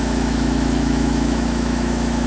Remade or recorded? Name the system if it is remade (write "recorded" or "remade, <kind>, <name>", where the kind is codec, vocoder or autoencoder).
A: remade, autoencoder, DAC-VAE